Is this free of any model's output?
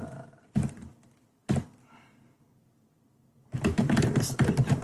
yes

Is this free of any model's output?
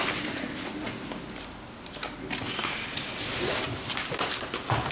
yes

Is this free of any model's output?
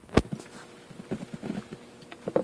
yes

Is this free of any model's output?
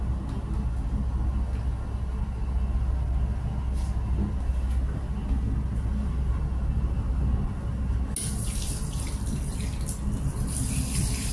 yes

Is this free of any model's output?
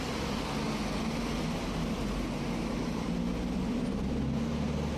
yes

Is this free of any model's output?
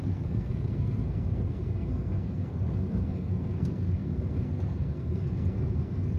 no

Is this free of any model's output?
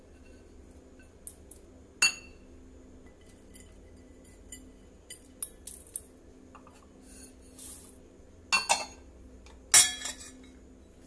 yes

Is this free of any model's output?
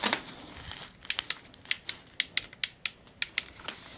yes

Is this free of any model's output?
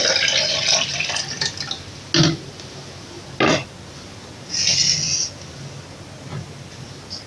yes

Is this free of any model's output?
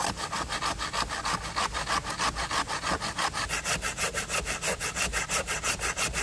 yes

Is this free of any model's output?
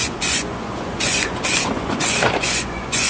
no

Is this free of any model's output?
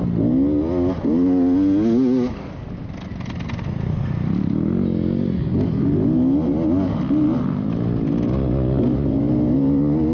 yes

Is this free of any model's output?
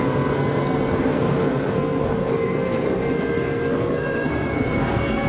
no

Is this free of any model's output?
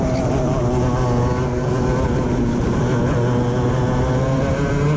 yes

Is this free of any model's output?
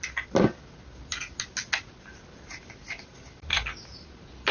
yes